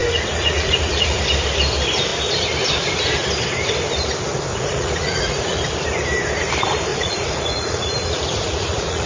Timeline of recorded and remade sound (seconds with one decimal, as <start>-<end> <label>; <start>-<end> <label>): 0.0-1.2 remade; 1.2-4.5 recorded; 4.5-5.6 remade; 5.6-6.9 recorded; 6.9-9.1 remade